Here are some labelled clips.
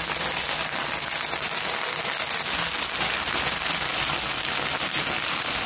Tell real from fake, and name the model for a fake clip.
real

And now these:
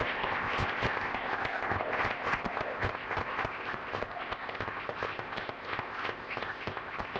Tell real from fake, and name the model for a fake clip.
fake, codec, ZipCodec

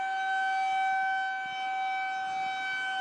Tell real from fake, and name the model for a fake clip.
real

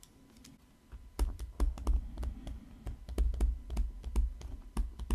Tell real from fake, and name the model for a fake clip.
real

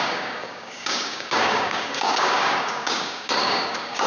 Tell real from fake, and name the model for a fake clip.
fake, codec, DAC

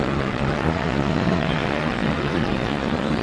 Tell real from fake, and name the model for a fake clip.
fake, vocoder, Vocos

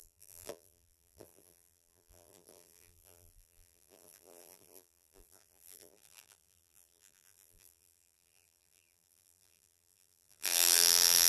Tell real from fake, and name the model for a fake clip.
fake, vocoder, BigVGAN v2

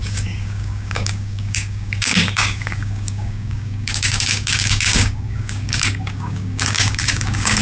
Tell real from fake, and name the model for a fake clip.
fake, codec, DAC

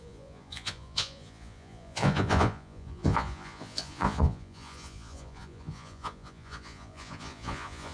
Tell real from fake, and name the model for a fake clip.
fake, vocoder, Vocos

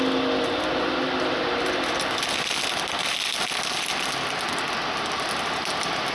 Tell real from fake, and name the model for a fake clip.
real